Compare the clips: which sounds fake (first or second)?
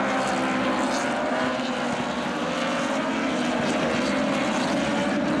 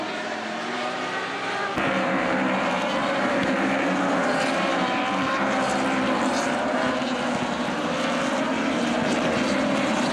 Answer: second